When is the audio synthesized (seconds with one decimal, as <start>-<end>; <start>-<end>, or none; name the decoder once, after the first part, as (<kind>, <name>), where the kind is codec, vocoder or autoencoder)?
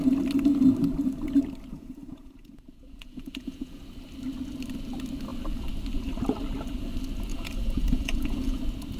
1.7-3.8 (vocoder, Vocos); 7.3-8.6